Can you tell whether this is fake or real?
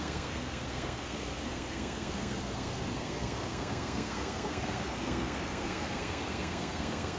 fake